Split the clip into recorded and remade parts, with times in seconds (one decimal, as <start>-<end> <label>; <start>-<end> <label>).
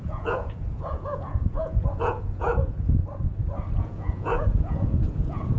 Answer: 0.0-3.0 remade; 3.0-3.8 recorded; 3.8-5.6 remade